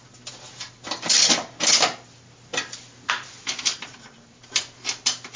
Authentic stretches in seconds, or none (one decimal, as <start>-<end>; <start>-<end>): 0.0-3.7; 4.5-5.4